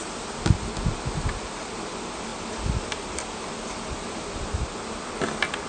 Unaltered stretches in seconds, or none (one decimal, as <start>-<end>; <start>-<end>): 0.0-5.7